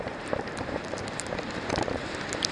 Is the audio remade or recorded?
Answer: remade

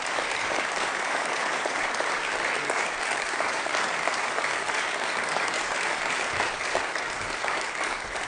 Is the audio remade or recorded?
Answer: remade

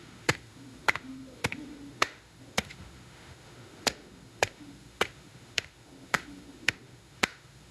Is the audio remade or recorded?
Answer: remade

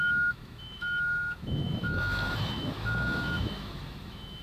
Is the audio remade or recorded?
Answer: remade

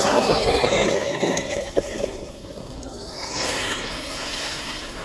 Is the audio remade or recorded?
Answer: remade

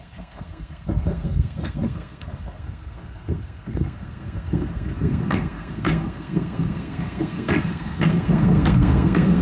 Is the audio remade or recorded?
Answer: remade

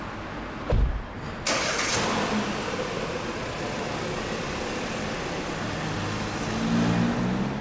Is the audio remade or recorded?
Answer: recorded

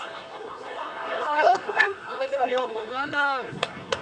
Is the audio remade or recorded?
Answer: remade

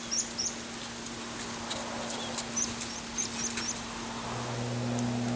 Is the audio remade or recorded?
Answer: recorded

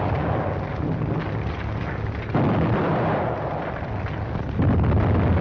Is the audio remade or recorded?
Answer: recorded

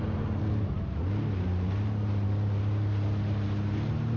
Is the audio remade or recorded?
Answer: recorded